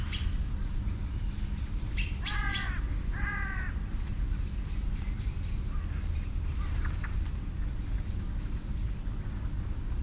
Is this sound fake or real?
real